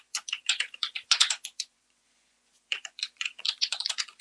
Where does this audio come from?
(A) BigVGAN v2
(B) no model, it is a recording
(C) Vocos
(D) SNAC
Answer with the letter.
C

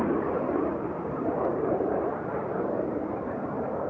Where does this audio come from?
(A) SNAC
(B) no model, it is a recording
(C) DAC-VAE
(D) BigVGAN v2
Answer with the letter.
D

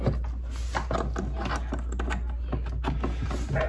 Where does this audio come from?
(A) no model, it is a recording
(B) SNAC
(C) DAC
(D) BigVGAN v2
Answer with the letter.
A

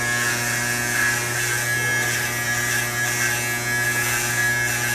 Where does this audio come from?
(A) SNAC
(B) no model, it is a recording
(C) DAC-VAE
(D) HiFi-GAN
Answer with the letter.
B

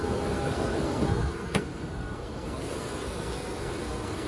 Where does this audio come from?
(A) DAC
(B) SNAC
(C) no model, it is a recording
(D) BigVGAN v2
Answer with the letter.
B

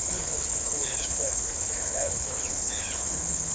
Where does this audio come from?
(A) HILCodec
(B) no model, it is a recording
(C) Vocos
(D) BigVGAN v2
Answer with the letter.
A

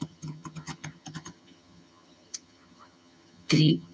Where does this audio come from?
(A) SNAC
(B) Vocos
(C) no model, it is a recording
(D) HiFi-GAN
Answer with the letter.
D